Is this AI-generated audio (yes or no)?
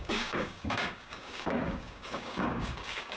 yes